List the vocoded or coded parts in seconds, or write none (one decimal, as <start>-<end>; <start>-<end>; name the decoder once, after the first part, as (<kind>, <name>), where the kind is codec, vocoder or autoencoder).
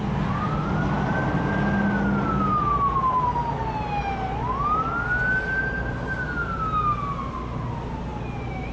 none